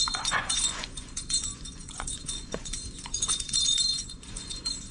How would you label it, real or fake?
fake